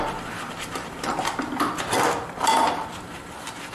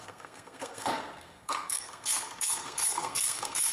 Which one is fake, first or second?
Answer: second